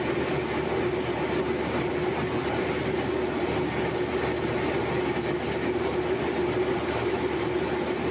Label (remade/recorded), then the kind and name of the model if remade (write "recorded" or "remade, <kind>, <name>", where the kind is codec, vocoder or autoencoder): recorded